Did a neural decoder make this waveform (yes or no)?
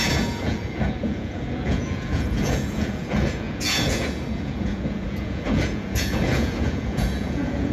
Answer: yes